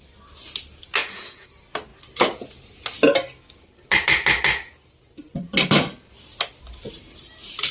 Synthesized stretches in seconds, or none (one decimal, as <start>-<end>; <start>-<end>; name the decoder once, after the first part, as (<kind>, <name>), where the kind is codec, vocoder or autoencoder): 1.0-1.5 (vocoder, Vocos)